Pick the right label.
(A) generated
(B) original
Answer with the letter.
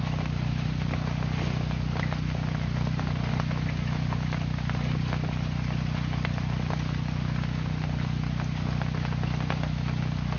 B